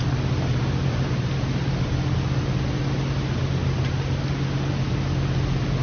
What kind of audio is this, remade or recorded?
recorded